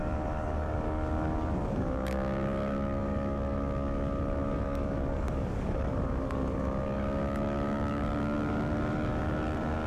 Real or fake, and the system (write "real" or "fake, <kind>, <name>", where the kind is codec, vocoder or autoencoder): fake, codec, DAC